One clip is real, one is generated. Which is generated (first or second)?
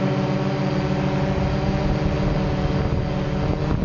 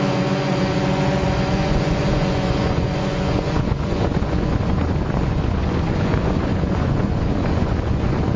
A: second